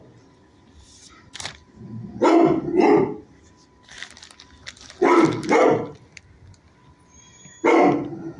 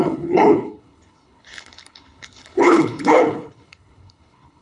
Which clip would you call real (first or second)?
first